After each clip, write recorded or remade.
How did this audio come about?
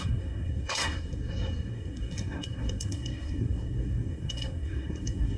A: remade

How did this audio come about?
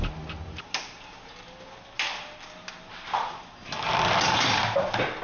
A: recorded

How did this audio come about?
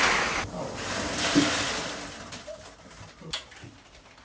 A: recorded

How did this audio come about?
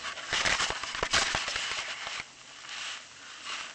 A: recorded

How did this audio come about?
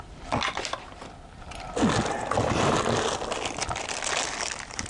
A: recorded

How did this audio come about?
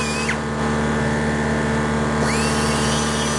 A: recorded